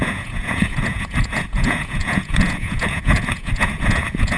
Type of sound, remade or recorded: remade